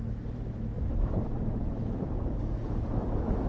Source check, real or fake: fake